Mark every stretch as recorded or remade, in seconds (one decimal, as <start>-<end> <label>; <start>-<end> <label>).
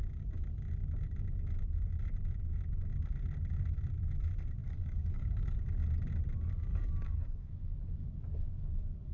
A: 0.0-4.6 recorded; 4.6-5.6 remade; 5.6-6.7 recorded; 6.7-7.5 remade; 7.5-9.1 recorded